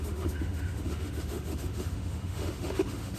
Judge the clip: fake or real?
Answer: fake